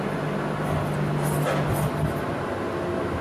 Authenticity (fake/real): real